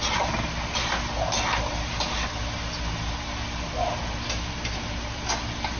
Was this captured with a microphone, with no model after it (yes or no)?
yes